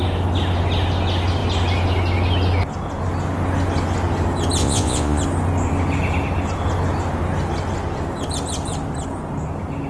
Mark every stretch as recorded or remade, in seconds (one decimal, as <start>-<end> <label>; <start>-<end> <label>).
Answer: 0.0-4.6 recorded; 4.6-5.2 remade; 5.2-9.9 recorded